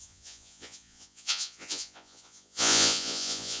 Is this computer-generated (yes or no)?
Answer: yes